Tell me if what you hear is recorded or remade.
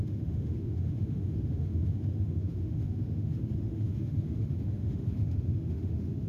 remade